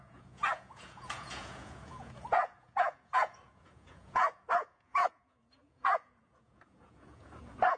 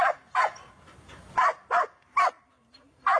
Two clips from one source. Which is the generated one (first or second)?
first